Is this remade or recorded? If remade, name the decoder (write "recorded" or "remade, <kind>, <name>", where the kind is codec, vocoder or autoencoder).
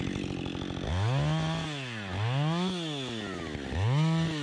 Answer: recorded